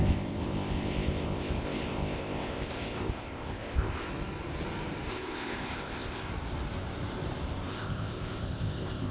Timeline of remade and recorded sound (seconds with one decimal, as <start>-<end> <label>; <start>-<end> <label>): 0.0-4.1 remade; 4.1-5.1 recorded; 5.1-6.3 remade; 6.3-7.7 recorded; 7.7-9.1 remade